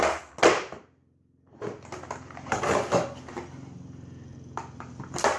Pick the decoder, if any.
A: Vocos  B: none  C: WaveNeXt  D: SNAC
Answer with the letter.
B